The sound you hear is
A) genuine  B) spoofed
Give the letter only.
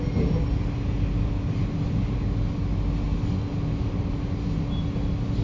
A